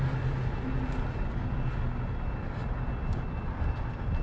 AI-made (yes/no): no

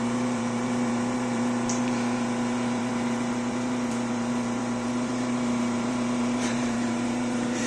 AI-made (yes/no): yes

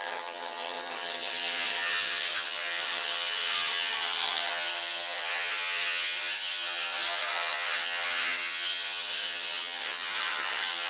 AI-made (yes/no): yes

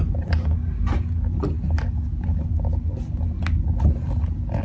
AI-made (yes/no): no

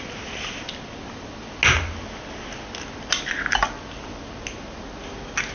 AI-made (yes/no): no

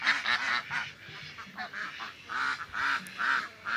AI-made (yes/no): no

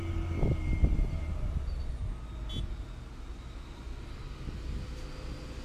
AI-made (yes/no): no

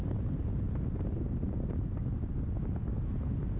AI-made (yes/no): no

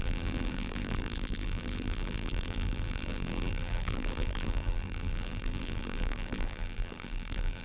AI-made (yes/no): yes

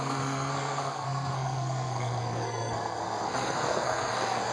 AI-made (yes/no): yes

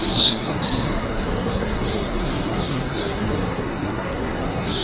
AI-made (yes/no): yes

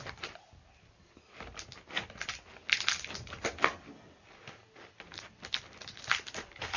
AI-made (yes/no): no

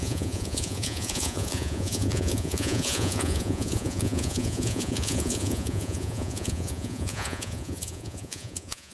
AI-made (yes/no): yes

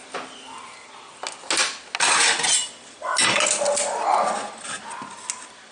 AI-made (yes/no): no